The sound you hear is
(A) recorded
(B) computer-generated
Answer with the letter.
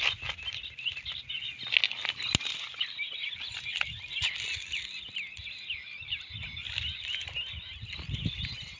A